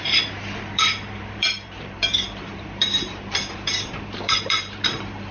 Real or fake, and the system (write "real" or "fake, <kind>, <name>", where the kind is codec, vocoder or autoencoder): fake, vocoder, BigVGAN v2